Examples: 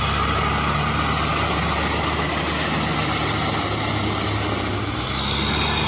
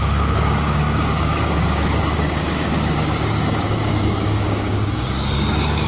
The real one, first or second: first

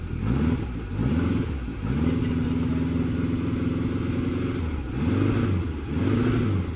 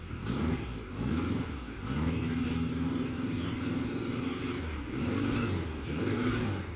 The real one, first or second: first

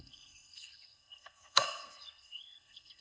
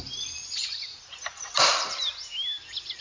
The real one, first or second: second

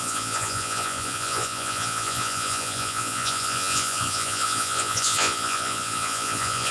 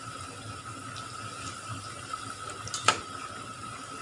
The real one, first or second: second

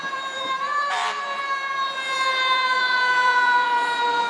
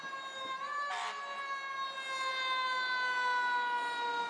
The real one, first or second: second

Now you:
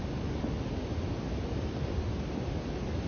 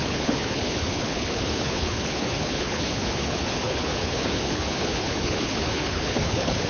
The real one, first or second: first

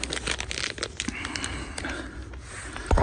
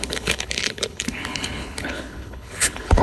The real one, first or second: first